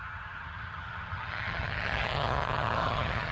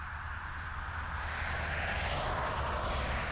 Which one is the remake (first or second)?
first